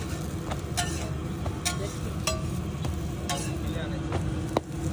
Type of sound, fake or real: real